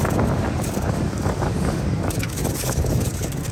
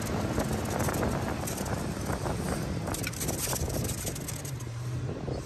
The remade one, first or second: first